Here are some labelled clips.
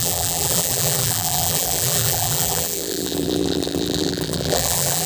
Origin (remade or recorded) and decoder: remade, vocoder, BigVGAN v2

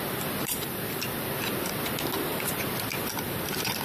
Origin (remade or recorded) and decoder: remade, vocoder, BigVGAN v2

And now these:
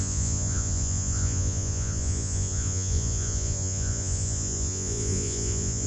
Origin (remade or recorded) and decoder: remade, vocoder, Vocos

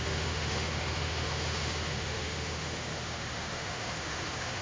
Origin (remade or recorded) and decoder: remade, autoencoder, DAC-VAE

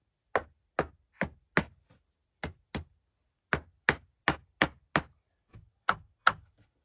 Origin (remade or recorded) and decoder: recorded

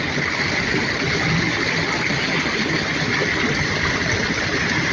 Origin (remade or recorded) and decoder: recorded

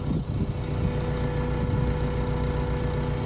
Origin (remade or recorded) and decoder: recorded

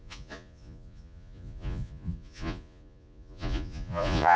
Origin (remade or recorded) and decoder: remade, vocoder, Vocos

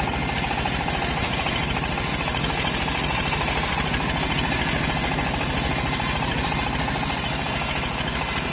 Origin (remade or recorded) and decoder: recorded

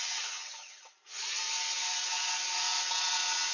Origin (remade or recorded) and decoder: remade, vocoder, WaveNeXt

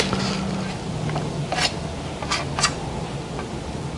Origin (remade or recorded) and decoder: recorded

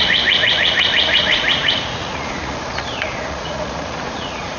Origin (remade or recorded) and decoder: remade, vocoder, Vocos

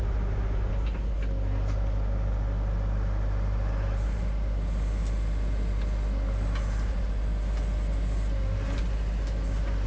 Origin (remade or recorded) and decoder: recorded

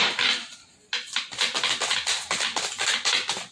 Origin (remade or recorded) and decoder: recorded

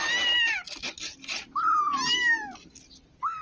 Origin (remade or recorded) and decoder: recorded